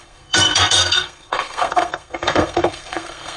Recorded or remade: remade